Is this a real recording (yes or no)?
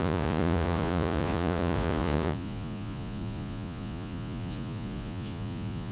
no